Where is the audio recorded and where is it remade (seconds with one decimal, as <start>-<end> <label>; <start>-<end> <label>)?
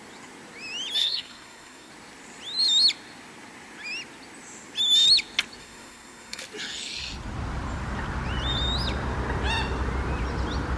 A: 0.0-1.0 recorded; 1.0-1.9 remade; 1.9-5.6 recorded; 5.6-6.4 remade; 6.4-10.8 recorded